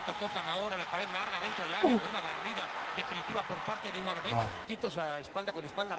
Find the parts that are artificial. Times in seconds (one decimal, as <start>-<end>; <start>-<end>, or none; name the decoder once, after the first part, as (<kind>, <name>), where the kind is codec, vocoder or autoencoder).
0.0-6.0 (codec, SNAC)